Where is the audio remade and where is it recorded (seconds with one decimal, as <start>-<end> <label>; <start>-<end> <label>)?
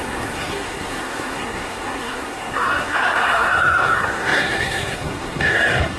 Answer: 0.0-6.0 remade